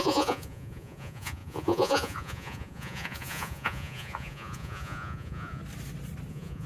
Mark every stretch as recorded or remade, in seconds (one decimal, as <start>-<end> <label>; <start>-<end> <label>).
0.0-5.6 remade; 5.6-6.3 recorded; 6.3-6.7 remade